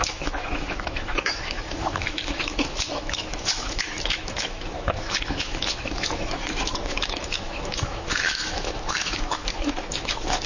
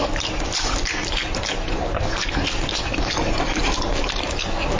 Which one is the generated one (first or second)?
first